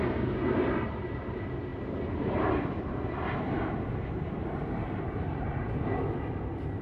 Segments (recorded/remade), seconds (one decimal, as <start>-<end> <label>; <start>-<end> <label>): 0.0-1.7 recorded; 1.7-5.8 remade; 5.8-6.8 recorded